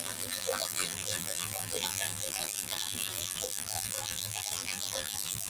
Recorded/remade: remade